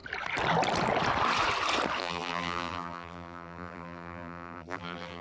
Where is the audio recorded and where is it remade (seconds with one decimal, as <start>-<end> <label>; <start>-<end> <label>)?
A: 0.0-2.0 recorded; 2.0-5.2 remade